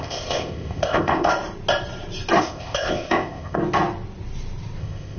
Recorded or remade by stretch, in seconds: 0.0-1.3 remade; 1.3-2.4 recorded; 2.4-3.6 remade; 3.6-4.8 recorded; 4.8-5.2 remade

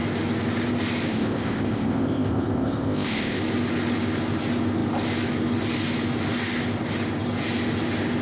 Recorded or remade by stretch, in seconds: 0.0-1.1 recorded; 1.1-3.4 remade; 3.4-8.2 recorded

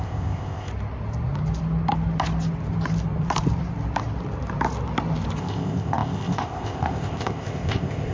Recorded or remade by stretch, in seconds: 0.0-0.7 remade; 0.7-5.4 recorded; 5.4-8.1 remade

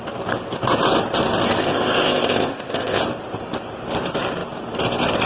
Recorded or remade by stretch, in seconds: 0.0-1.6 recorded; 1.6-3.0 remade; 3.0-5.3 recorded